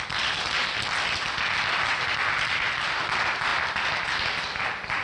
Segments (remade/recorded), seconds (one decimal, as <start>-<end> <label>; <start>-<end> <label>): 0.0-5.0 recorded